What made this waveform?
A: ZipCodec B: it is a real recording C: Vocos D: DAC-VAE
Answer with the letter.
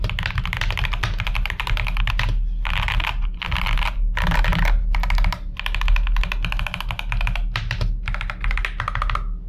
B